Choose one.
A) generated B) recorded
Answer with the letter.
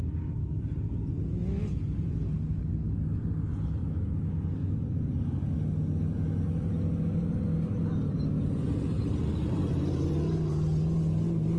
B